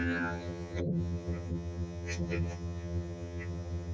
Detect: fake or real fake